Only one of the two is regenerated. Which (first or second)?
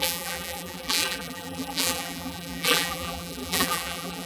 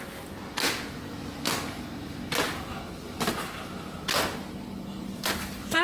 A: first